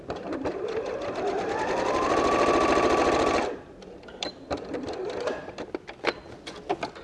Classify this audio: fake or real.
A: fake